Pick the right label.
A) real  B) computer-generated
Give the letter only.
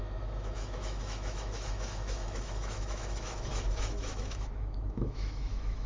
B